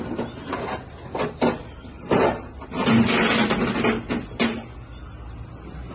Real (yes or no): yes